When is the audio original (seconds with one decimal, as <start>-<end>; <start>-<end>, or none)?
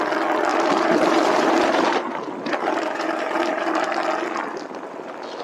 0.0-0.5; 3.7-5.4